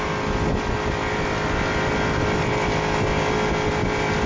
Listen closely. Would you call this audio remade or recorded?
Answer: recorded